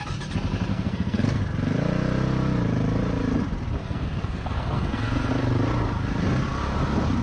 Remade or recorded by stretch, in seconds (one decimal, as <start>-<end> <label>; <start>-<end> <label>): 0.0-0.7 recorded; 0.7-1.4 remade; 1.4-3.8 recorded; 3.8-5.3 remade; 5.3-7.2 recorded